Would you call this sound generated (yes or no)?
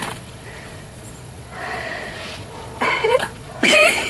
yes